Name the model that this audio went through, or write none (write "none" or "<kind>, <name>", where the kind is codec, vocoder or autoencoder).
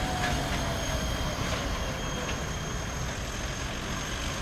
none